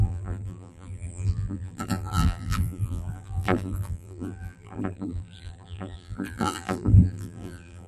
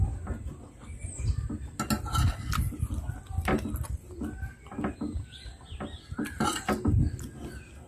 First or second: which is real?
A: second